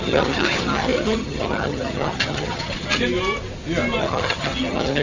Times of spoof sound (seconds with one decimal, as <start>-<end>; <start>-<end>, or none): 0.0-3.0; 4.0-5.0